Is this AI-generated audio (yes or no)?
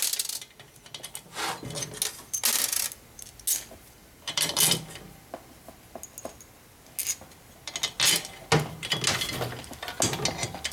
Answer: no